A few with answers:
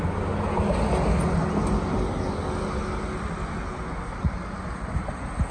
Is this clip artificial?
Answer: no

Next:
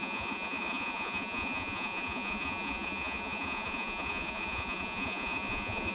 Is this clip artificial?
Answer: yes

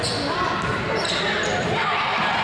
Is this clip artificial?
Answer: no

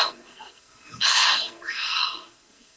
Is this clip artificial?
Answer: yes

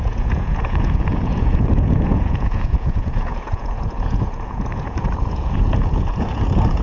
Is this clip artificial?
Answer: yes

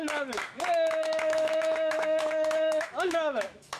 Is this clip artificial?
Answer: yes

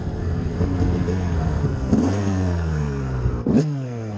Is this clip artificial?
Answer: yes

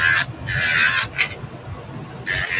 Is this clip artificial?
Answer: no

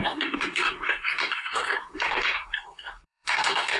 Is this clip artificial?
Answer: yes